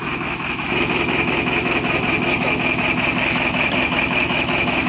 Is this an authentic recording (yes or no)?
no